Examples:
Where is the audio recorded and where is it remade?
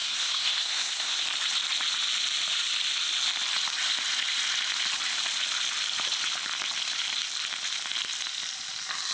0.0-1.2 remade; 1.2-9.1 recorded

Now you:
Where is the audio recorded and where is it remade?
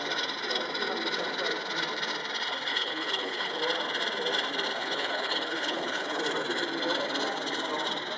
0.0-2.7 recorded; 2.7-3.6 remade; 3.6-4.8 recorded; 4.8-6.2 remade; 6.2-8.2 recorded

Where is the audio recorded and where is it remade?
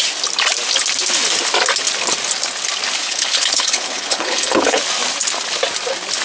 0.0-3.0 recorded; 3.0-4.8 remade; 4.8-6.2 recorded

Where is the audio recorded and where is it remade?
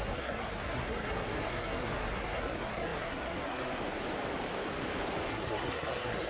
0.0-3.8 remade; 3.8-5.3 recorded; 5.3-6.3 remade